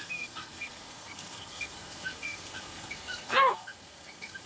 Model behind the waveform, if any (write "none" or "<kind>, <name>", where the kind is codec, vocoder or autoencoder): codec, SNAC